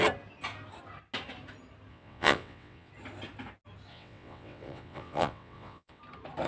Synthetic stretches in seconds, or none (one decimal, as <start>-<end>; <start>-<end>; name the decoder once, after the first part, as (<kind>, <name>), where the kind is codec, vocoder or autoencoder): 1.9-2.9 (vocoder, WaveNeXt); 3.9-6.0